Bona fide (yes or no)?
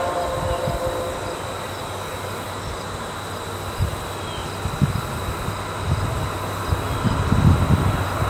yes